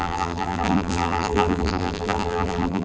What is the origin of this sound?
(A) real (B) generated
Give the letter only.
B